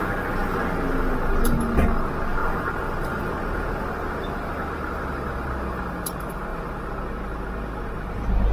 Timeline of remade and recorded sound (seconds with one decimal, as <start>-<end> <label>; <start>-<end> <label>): 0.0-2.4 recorded; 2.4-5.5 remade; 5.5-8.5 recorded